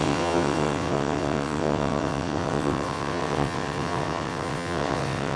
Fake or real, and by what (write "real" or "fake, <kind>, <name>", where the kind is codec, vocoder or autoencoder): fake, vocoder, WaveNeXt